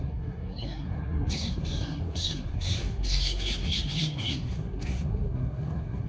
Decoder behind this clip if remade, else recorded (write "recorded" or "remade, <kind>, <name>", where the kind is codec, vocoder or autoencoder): remade, codec, SNAC